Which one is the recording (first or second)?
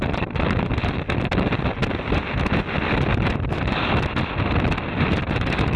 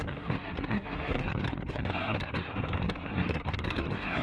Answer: first